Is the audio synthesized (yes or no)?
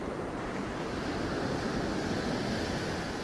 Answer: no